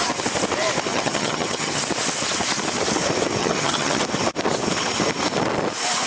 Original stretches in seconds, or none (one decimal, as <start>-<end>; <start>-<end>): 0.0-0.9; 1.8-3.4; 4.0-6.1